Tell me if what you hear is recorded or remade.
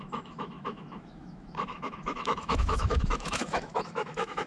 remade